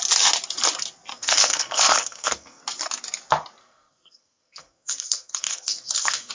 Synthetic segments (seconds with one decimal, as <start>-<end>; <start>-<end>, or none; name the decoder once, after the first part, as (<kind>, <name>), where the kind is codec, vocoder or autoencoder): 1.1-2.6 (codec, SNAC); 3.6-6.3